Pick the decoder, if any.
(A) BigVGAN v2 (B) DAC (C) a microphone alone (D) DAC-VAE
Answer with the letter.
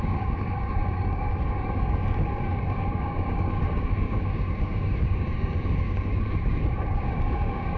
B